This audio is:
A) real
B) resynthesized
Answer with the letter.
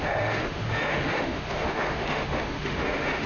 B